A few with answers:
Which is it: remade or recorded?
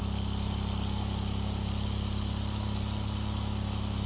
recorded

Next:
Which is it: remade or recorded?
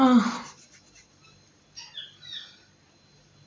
recorded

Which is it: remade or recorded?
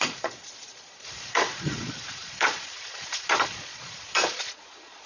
remade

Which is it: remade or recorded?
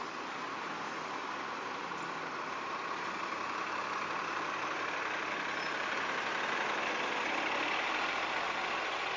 recorded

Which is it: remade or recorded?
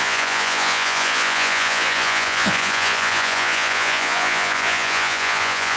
remade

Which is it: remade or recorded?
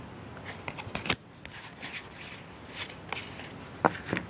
recorded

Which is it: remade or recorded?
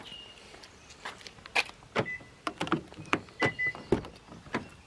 recorded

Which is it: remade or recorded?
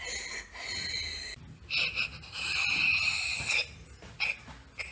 recorded